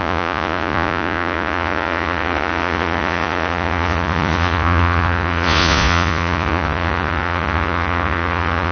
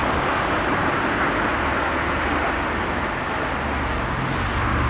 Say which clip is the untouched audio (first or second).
second